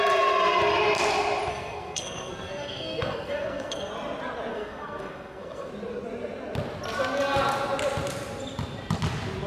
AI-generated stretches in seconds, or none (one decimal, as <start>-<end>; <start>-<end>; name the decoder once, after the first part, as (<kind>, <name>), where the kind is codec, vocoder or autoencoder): 1.5-3.9 (codec, SNAC); 4.5-5.7